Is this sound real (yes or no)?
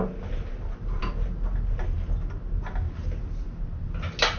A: yes